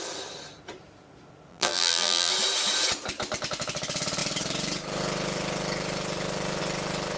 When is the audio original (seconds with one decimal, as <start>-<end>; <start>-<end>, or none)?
0.0-1.5; 2.3-7.2